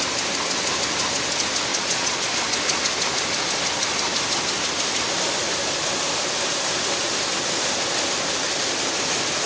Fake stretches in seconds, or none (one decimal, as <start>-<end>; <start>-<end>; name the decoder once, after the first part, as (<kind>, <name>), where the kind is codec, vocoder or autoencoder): 1.7-2.3 (vocoder, Vocos)

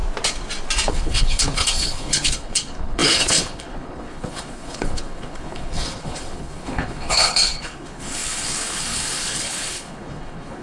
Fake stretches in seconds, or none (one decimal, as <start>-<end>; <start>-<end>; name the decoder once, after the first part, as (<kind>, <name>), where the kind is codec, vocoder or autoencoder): 0.9-10.6 (codec, HILCodec)